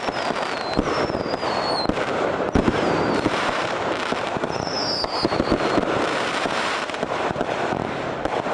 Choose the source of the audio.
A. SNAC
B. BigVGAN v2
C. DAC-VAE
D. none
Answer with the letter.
B